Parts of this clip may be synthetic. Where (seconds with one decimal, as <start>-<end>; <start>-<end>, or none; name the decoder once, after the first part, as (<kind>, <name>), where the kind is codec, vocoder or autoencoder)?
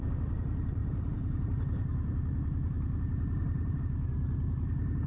0.8-3.8 (vocoder, BigVGAN v2)